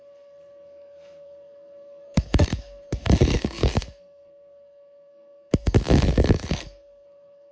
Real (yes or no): no